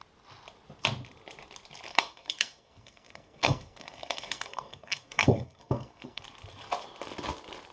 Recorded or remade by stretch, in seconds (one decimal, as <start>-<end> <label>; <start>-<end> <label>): 0.0-1.9 recorded; 1.9-6.2 remade; 6.2-7.7 recorded